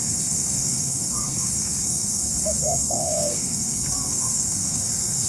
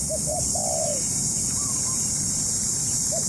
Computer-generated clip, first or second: first